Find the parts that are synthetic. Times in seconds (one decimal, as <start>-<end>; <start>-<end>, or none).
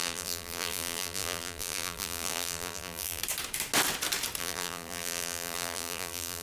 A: 0.0-3.2; 4.4-6.4